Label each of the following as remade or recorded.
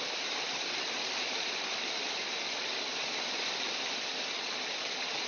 remade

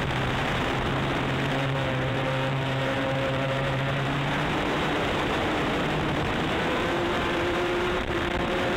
remade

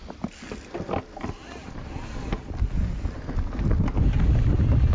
recorded